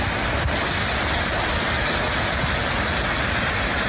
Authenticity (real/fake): real